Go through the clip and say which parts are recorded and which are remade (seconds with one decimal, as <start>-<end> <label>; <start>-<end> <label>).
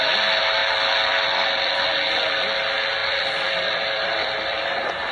0.0-0.6 recorded; 0.6-1.7 remade; 1.7-3.0 recorded; 3.0-5.1 remade